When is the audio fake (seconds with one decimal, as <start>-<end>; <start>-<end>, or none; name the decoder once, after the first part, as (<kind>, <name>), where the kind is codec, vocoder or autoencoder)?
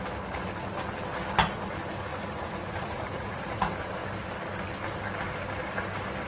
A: 2.1-3.6 (vocoder, Vocos)